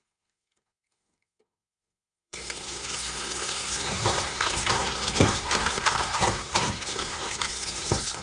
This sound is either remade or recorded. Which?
remade